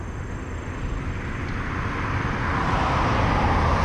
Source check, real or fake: real